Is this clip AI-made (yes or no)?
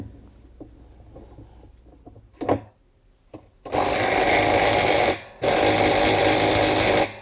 no